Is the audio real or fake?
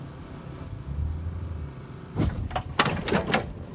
real